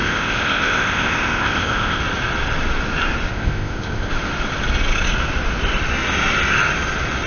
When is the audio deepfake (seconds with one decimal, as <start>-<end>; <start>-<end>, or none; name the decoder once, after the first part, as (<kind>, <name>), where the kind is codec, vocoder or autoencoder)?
0.0-2.0 (codec, ZipCodec); 3.3-4.1